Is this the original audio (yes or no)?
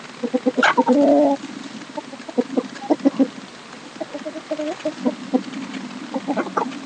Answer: yes